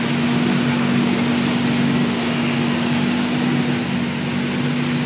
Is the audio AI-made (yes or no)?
no